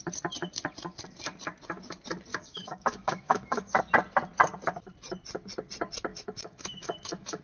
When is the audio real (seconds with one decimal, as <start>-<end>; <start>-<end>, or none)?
0.0-2.3; 3.8-6.1